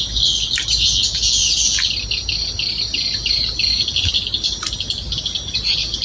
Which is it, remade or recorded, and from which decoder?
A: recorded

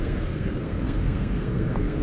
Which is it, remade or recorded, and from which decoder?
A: remade, codec, SNAC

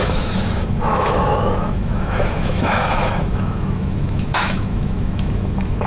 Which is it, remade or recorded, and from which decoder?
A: remade, autoencoder, DAC-VAE